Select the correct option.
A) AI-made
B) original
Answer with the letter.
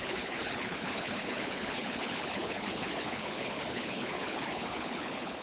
A